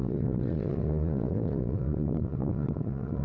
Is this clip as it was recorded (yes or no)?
no